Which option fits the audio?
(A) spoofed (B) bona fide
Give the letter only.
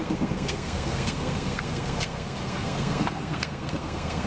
A